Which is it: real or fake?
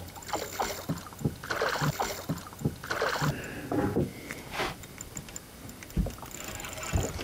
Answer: real